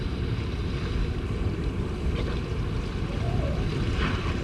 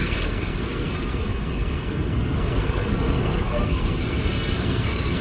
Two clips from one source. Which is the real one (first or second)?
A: first